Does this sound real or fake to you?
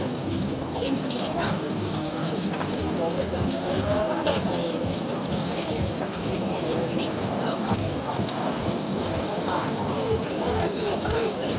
fake